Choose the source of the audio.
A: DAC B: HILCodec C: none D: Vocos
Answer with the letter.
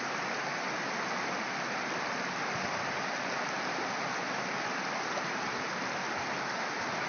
C